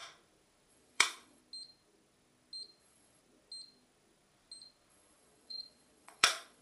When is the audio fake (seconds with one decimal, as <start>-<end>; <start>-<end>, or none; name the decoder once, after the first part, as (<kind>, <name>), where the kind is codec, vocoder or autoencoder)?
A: 0.7-1.4 (vocoder, Vocos); 2.8-3.2; 4.9-6.6

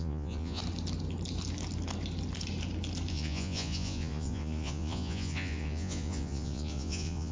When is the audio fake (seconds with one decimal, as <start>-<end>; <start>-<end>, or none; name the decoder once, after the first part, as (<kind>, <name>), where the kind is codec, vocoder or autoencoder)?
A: 0.0-0.6 (vocoder, Vocos); 3.1-7.3

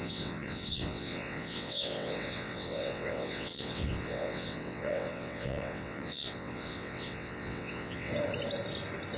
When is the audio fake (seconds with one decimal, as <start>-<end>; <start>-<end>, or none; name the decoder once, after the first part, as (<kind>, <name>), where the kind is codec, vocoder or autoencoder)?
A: 0.0-8.1 (vocoder, WaveNeXt)

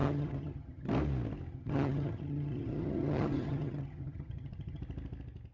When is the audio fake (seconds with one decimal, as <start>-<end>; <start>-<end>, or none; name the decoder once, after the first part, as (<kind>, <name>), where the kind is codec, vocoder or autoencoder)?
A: 0.0-0.9 (vocoder, HiFi-GAN); 1.5-4.8

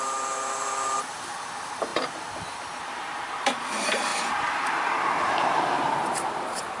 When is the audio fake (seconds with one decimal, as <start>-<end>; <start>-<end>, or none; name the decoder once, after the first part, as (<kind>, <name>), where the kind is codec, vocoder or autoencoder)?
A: 0.0-6.8 (vocoder, BigVGAN v2)

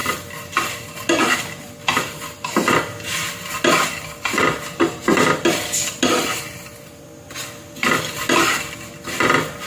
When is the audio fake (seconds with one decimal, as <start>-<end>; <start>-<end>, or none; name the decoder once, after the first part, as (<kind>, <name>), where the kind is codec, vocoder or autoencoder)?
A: none

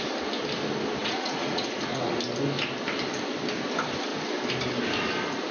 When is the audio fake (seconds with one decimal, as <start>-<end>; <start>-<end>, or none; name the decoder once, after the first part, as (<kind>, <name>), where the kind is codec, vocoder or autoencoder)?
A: 1.0-2.1 (vocoder, Vocos)

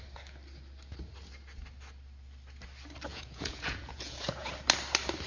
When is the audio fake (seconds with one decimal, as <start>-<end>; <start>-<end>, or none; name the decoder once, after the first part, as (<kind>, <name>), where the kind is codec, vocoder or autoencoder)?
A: 3.1-4.5 (vocoder, Vocos)